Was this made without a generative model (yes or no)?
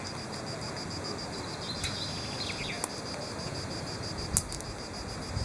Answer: yes